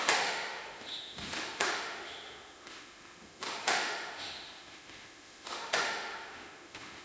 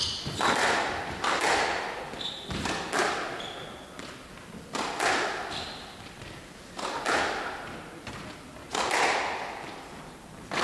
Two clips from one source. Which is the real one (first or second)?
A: second